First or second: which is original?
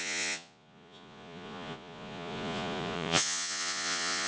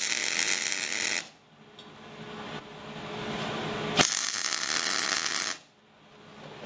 second